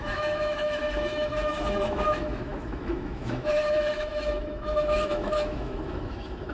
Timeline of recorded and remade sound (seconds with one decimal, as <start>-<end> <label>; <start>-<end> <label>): 0.0-6.5 remade

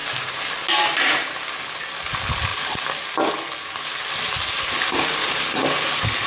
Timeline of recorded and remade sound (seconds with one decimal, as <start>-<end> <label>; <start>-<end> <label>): 0.0-6.3 recorded

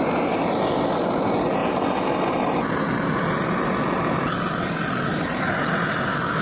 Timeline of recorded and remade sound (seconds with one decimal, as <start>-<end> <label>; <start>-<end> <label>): 0.0-6.4 recorded

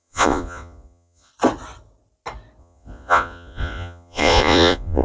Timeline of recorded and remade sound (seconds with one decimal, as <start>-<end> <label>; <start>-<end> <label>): 0.0-1.3 remade; 1.3-2.6 recorded; 2.6-5.0 remade